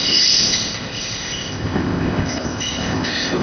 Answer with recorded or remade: remade